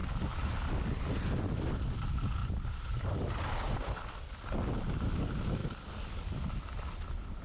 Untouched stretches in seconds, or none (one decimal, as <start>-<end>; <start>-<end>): 0.7-2.4; 2.9-7.4